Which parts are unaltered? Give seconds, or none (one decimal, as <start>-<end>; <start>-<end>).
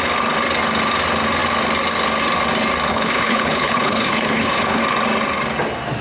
0.0-2.9; 4.8-6.0